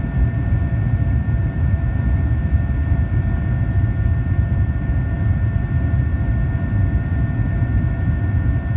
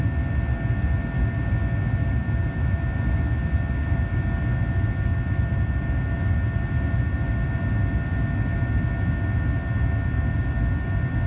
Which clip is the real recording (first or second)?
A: second